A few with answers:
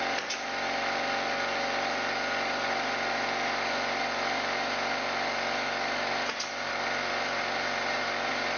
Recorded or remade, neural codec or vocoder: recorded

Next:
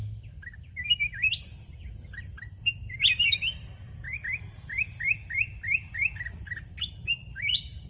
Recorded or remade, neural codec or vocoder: recorded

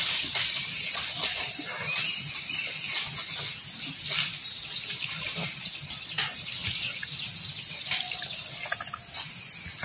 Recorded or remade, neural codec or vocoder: recorded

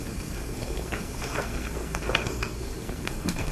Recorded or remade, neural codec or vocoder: remade, codec, SNAC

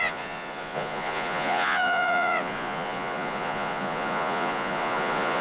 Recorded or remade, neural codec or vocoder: remade, vocoder, Vocos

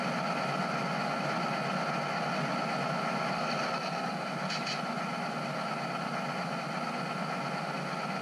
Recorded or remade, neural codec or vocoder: recorded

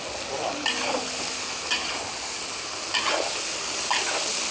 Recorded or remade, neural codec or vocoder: recorded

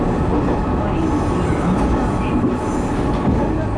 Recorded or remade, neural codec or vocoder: recorded